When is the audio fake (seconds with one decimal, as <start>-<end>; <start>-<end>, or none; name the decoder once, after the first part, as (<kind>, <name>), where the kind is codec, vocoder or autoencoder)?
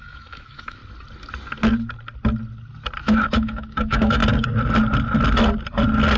0.0-0.8 (autoencoder, DAC-VAE); 3.0-4.2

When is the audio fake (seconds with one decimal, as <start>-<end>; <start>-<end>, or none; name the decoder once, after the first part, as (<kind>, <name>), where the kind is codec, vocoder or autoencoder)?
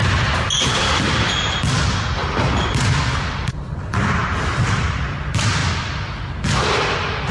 none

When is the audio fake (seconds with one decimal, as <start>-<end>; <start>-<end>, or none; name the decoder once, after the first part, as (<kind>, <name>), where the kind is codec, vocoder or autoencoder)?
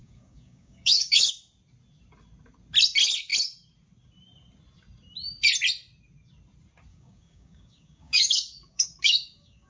0.0-1.3 (codec, DAC); 6.9-9.7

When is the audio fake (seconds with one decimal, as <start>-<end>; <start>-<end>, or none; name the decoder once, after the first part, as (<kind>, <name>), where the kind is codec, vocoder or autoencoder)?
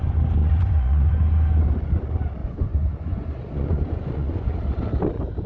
0.4-1.1 (vocoder, Vocos); 2.4-4.5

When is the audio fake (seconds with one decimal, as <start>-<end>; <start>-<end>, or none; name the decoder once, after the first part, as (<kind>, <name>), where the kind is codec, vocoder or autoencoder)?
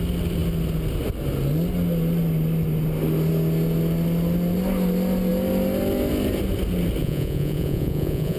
7.0-8.4 (vocoder, Vocos)